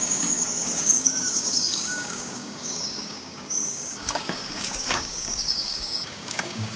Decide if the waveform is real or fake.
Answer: fake